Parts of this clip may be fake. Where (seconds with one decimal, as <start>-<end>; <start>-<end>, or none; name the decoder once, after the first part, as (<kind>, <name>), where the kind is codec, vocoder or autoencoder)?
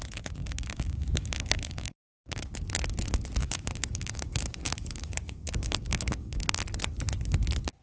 0.4-2.6 (codec, DAC); 3.4-6.6